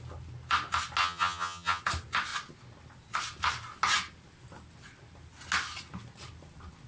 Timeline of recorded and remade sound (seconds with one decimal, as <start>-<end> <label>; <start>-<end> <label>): 0.0-1.0 recorded; 1.0-1.8 remade; 1.8-6.9 recorded